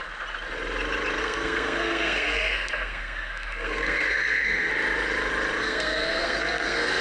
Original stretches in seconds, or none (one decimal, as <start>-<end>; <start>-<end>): 0.0-1.2; 4.7-5.6